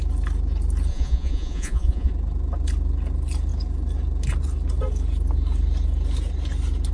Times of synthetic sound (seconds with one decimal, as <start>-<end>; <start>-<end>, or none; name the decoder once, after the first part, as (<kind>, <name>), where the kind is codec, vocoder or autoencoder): 0.9-2.1 (vocoder, Vocos)